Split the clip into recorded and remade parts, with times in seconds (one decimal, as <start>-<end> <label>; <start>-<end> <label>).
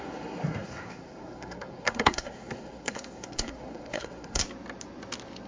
0.0-4.4 remade; 4.4-5.5 recorded